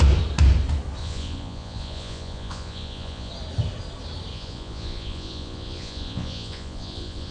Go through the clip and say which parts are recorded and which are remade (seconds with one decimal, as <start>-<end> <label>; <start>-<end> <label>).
0.0-1.0 recorded; 1.0-3.3 remade; 3.3-4.3 recorded; 4.3-7.3 remade